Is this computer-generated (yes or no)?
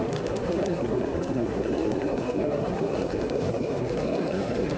yes